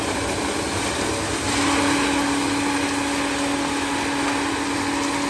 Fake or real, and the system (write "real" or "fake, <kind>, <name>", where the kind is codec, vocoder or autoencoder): real